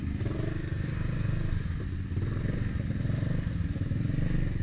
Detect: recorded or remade recorded